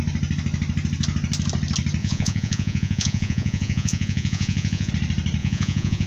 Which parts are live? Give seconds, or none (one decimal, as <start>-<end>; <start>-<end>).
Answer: 0.0-2.0; 4.9-5.4